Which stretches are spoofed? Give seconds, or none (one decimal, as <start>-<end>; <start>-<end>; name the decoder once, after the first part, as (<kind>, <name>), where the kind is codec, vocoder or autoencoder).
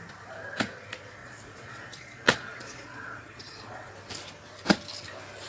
1.2-3.9 (vocoder, Vocos)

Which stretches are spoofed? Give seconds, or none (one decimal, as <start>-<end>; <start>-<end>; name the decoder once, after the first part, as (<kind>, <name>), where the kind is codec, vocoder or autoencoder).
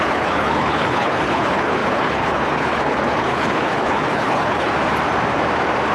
0.0-4.7 (codec, HILCodec)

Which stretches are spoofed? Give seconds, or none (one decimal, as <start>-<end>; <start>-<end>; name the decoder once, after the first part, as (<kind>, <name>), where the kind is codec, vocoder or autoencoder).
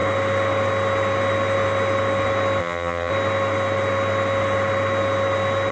2.6-3.1 (vocoder, HiFi-GAN)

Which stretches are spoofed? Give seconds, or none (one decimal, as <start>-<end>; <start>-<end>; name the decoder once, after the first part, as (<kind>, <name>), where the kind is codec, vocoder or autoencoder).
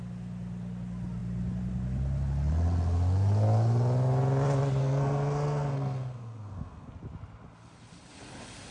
4.8-6.9 (codec, SNAC)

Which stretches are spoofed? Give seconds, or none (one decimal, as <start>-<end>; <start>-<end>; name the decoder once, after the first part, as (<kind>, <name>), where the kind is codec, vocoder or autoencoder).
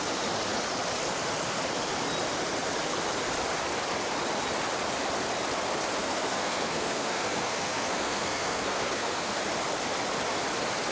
6.0-9.4 (codec, SNAC)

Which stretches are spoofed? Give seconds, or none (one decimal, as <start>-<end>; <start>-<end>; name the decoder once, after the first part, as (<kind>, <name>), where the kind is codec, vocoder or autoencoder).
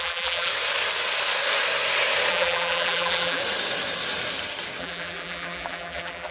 0.0-0.5 (vocoder, BigVGAN v2); 2.3-3.4; 4.8-6.3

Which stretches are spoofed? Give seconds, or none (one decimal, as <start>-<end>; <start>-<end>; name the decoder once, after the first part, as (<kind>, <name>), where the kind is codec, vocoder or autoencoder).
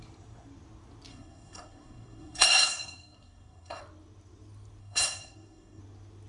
1.1-3.8 (codec, SNAC); 4.8-5.8